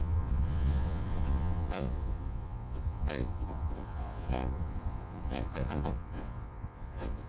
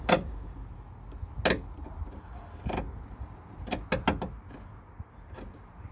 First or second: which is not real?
first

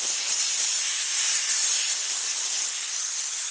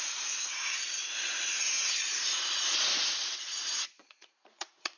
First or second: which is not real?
second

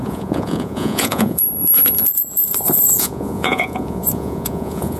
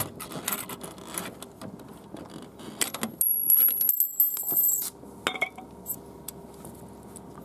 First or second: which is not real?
first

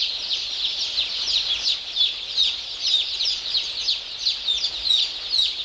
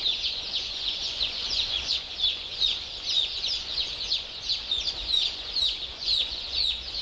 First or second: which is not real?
second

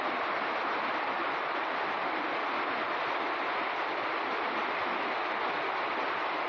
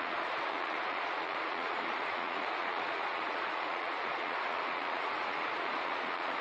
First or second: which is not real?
second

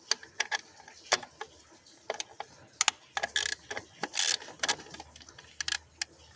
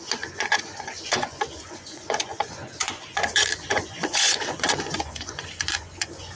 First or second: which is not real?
second